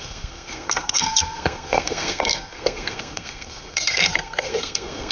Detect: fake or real fake